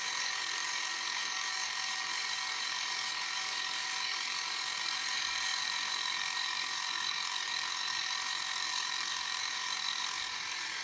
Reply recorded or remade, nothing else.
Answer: remade